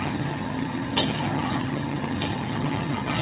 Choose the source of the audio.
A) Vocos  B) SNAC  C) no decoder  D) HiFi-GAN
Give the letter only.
D